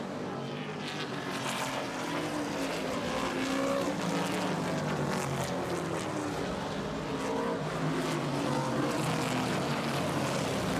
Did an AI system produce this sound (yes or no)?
no